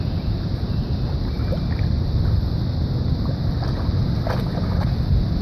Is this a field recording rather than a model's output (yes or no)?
yes